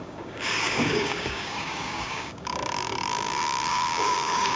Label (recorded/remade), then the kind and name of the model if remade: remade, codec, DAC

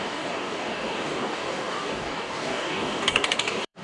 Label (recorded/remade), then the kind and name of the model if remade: remade, codec, DAC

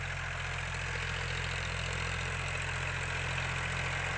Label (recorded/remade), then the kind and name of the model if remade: recorded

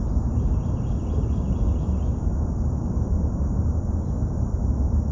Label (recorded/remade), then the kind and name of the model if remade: recorded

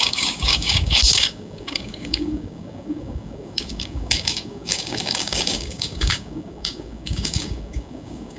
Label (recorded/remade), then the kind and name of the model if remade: remade, codec, DAC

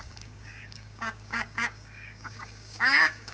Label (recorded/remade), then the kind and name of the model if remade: remade, codec, DAC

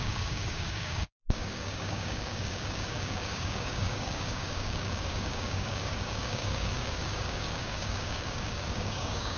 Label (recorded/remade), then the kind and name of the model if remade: remade, codec, DAC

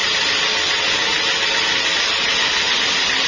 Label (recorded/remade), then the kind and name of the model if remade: recorded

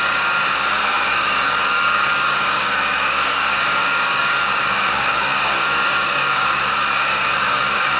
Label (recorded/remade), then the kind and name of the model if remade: remade, codec, DAC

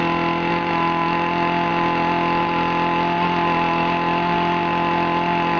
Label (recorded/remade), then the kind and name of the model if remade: recorded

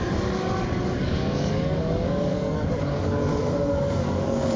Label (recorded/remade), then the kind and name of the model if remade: remade, codec, DAC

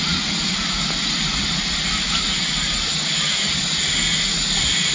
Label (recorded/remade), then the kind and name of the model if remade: recorded